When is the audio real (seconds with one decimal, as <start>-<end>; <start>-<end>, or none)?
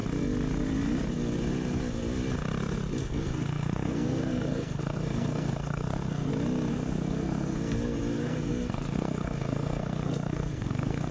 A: 0.0-3.0; 6.3-6.7